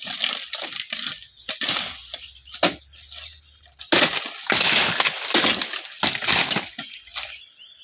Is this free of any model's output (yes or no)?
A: yes